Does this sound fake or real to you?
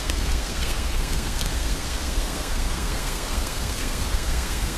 fake